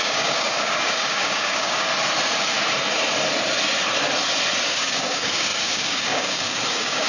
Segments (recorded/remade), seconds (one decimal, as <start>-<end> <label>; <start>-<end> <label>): 0.0-1.9 remade; 1.9-4.6 recorded; 4.6-7.1 remade